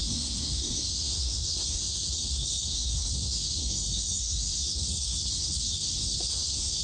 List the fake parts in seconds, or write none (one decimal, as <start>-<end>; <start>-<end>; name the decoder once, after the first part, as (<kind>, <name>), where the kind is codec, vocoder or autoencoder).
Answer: 0.0-6.8 (codec, SNAC)